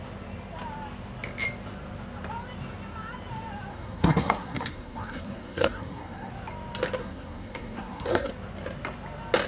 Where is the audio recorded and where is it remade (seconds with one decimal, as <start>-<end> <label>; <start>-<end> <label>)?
0.0-3.7 recorded; 3.7-6.3 remade; 6.3-7.0 recorded; 7.0-8.3 remade; 8.3-9.5 recorded